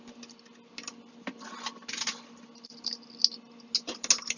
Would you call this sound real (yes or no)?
yes